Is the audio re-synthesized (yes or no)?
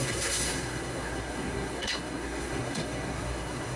yes